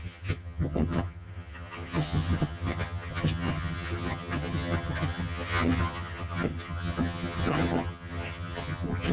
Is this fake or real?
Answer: fake